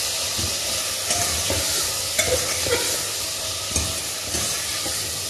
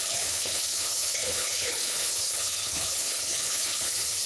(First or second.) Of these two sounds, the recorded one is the first